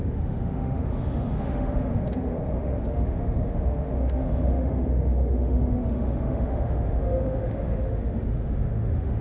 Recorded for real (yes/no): no